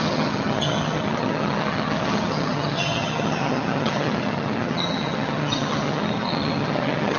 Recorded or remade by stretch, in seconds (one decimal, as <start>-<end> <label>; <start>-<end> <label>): 0.0-7.2 remade